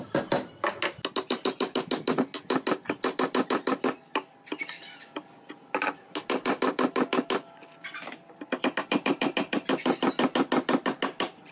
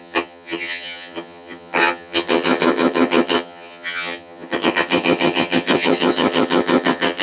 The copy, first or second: second